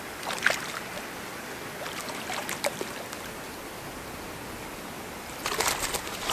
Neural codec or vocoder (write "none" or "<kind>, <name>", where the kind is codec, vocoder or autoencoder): none